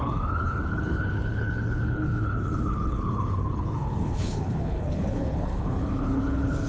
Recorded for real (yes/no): no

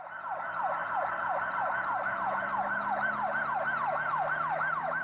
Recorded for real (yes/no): yes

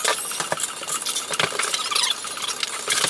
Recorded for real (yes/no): yes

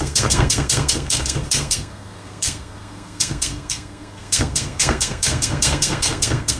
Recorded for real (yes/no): no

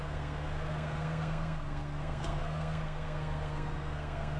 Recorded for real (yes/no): no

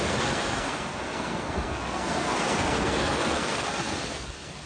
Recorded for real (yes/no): no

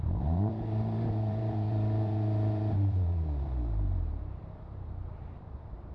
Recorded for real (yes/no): no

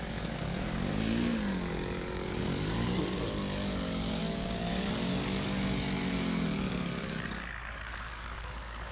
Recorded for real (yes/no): no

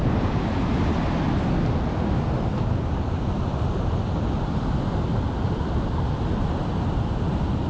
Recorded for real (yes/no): yes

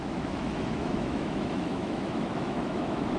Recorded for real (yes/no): no